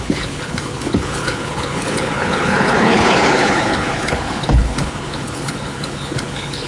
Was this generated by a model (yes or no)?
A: yes